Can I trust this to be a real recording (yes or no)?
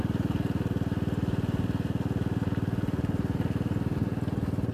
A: yes